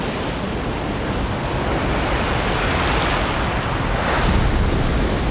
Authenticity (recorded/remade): recorded